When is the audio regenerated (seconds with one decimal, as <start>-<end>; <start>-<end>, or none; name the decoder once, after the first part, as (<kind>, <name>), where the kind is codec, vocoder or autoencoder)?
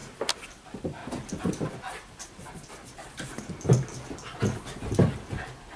none